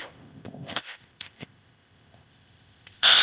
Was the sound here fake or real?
fake